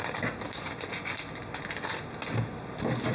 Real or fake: real